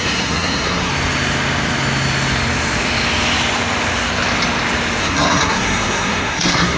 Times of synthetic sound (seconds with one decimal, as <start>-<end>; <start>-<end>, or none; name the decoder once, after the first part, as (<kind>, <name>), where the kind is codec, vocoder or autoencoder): 0.0-0.9 (codec, SNAC); 5.0-6.8